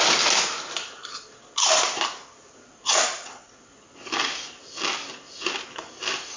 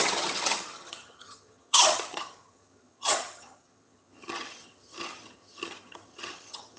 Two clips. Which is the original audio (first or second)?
first